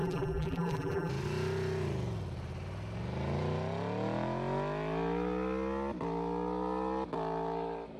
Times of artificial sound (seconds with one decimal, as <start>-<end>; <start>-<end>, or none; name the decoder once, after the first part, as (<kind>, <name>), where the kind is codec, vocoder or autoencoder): 0.0-1.1 (vocoder, BigVGAN v2)